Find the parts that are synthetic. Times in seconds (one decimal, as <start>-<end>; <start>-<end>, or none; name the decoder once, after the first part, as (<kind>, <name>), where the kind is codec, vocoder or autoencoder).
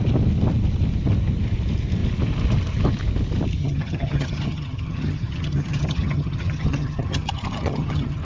3.6-8.2 (vocoder, HiFi-GAN)